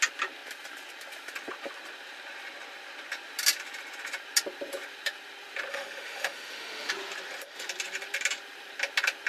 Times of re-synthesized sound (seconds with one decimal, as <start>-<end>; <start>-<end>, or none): 5.7-6.9